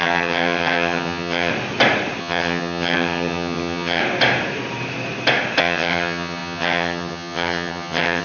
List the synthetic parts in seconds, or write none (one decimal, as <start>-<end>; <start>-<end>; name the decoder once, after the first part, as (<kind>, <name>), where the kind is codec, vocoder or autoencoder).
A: 0.0-1.5 (vocoder, HiFi-GAN); 2.2-4.0; 5.6-8.2